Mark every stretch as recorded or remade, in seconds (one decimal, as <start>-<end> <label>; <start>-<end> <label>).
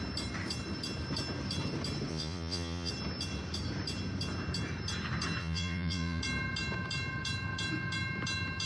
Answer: 0.0-2.1 recorded; 2.1-2.9 remade; 2.9-5.4 recorded; 5.4-6.2 remade; 6.2-8.7 recorded